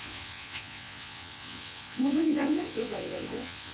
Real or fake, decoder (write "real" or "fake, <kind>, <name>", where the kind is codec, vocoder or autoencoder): fake, vocoder, WaveNeXt